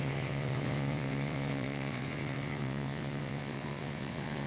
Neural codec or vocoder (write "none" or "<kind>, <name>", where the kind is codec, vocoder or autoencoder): vocoder, WaveNeXt